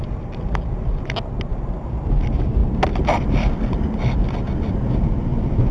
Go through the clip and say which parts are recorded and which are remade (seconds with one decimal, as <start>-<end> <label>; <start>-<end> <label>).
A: 0.0-5.7 recorded